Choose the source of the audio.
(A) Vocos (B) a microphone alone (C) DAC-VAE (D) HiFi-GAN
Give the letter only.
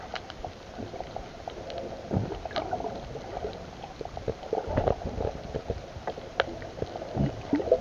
B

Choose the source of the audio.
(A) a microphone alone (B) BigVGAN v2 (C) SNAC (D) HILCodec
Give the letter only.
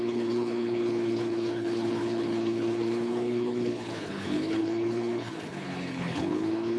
D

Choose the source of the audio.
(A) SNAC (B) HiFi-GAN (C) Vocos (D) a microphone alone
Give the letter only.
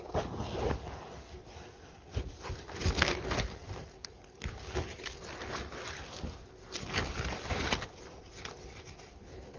D